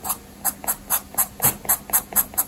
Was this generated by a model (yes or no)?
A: no